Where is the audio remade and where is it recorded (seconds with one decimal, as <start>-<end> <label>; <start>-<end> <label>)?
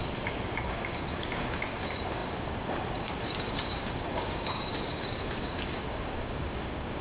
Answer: 0.0-0.6 recorded; 0.6-7.0 remade